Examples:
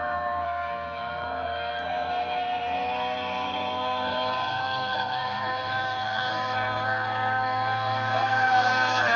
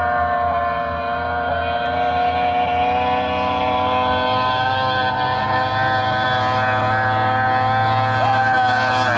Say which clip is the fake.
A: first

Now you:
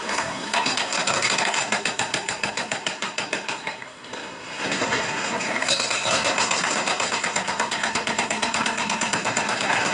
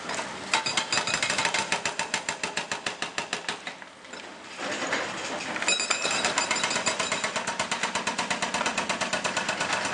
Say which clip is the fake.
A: first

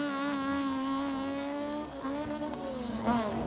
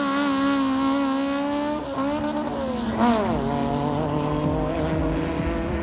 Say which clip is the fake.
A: first